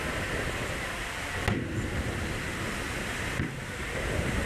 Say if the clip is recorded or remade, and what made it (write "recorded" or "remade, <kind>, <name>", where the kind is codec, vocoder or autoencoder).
recorded